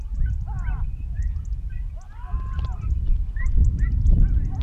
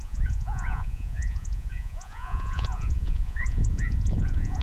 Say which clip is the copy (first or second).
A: second